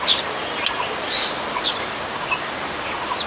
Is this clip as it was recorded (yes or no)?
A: yes